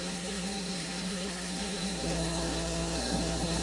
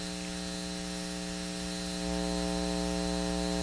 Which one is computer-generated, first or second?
first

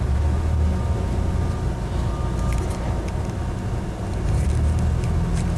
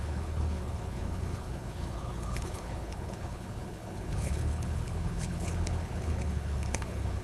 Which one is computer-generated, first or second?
second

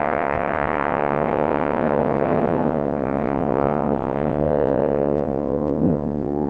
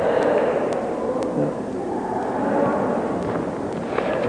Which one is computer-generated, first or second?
first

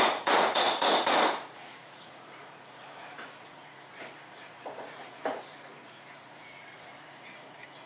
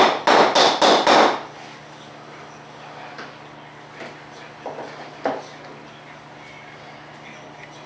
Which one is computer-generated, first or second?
first